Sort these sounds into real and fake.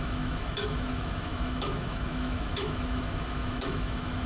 fake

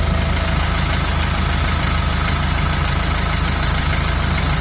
real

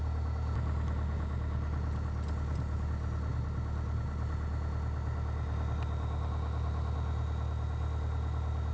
real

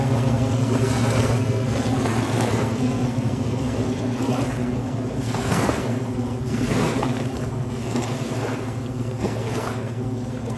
fake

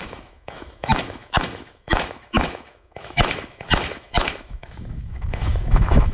fake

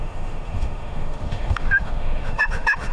fake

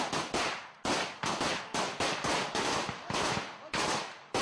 real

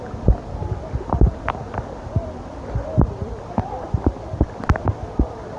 real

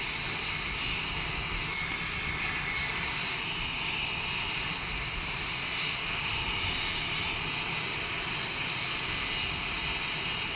real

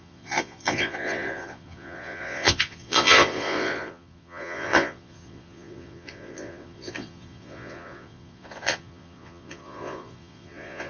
fake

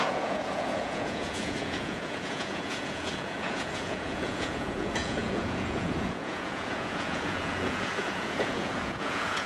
fake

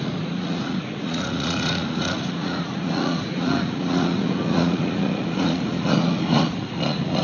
fake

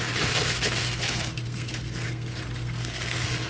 fake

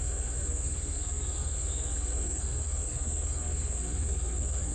fake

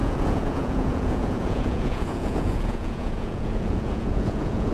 fake